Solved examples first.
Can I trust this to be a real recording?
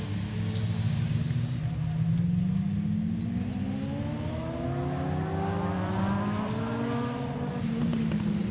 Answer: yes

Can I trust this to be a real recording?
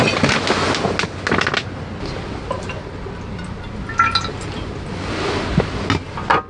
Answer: yes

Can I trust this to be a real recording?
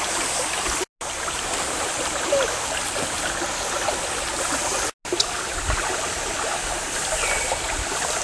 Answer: yes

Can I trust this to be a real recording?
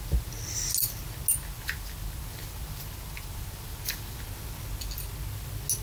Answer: yes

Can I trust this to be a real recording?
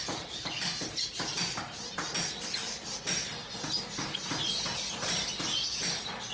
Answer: yes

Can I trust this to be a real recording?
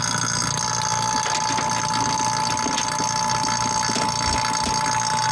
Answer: yes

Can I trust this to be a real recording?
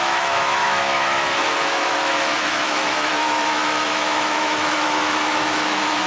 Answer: no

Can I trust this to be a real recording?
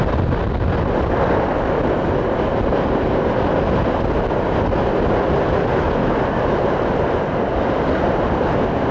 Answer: yes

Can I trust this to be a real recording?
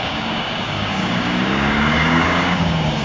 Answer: no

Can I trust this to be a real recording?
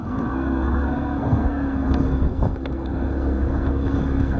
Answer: no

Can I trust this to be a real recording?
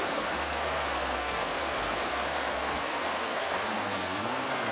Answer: no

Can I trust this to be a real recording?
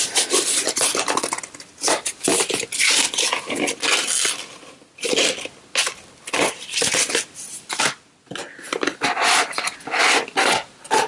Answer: yes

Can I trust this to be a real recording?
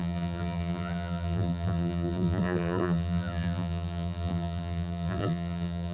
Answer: no